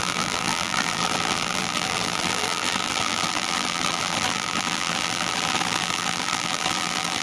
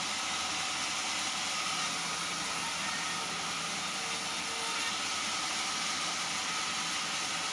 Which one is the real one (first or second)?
second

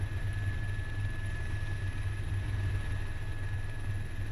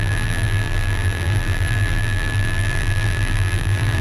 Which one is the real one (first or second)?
first